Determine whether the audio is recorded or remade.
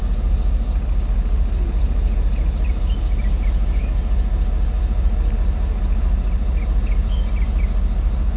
recorded